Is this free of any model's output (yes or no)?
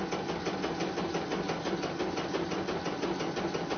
yes